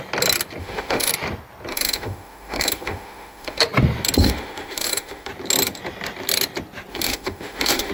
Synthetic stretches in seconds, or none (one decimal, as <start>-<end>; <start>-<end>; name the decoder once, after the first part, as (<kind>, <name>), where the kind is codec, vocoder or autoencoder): 0.6-1.1 (autoencoder, DAC-VAE); 1.7-3.6; 4.2-5.3; 6.9-7.9